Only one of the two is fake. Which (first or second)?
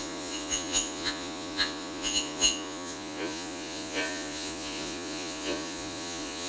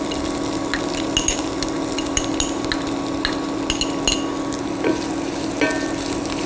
first